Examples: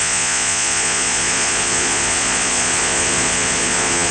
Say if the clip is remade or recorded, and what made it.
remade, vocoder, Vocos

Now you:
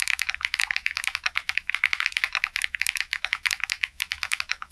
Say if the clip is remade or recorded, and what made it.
remade, autoencoder, DAC-VAE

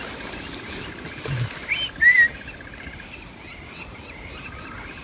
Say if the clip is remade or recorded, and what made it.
recorded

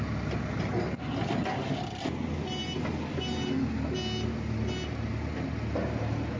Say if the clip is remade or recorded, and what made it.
recorded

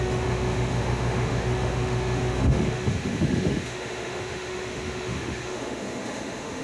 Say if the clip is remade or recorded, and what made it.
remade, autoencoder, DAC-VAE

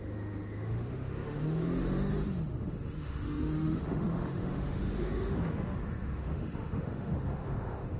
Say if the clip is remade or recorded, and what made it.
remade, autoencoder, DAC-VAE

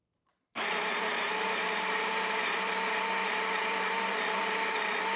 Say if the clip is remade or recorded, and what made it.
recorded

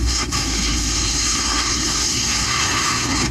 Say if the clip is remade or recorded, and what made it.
remade, codec, SNAC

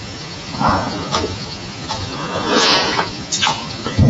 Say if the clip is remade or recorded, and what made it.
remade, vocoder, Vocos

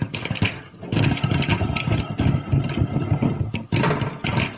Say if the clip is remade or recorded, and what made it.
recorded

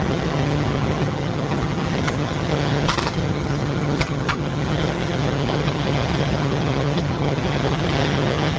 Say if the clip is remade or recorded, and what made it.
remade, vocoder, HiFi-GAN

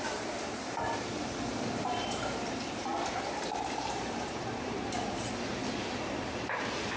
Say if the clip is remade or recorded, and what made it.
remade, vocoder, BigVGAN v2